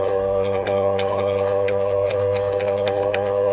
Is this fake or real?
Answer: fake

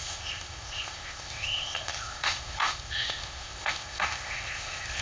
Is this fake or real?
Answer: fake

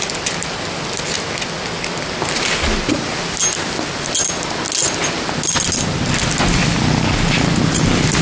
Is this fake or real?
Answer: real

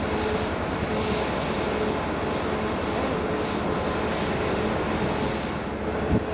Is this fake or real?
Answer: real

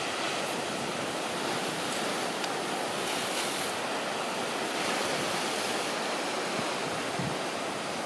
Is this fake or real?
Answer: real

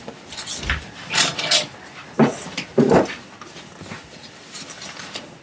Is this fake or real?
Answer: real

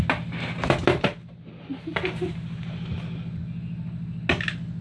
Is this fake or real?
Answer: real